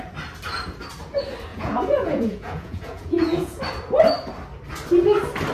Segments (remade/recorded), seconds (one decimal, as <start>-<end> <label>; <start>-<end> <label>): 0.0-1.5 recorded; 1.5-3.6 remade; 3.6-5.5 recorded